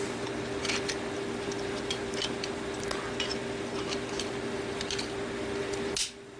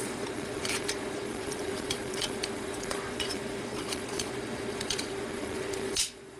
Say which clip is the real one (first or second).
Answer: first